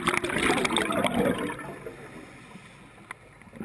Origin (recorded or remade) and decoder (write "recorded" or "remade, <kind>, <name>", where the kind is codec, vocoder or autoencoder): recorded